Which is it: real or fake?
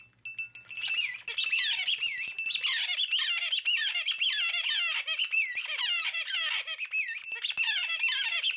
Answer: real